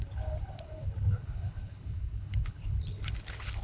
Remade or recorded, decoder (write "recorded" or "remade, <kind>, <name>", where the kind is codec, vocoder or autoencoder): remade, codec, HILCodec